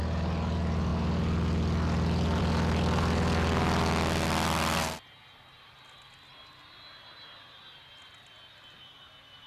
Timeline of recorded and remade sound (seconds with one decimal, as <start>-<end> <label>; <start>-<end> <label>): 0.0-9.5 recorded